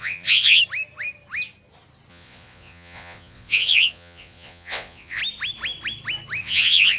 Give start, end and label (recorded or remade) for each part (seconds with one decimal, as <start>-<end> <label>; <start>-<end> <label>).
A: 0.0-0.6 remade; 0.6-2.1 recorded; 2.1-5.2 remade; 5.2-6.4 recorded; 6.4-7.0 remade